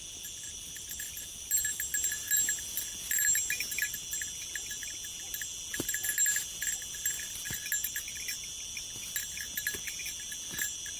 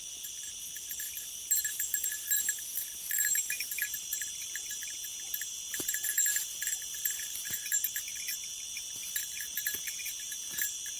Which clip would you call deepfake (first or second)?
second